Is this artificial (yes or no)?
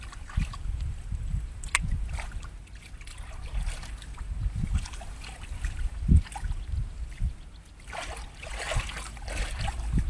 no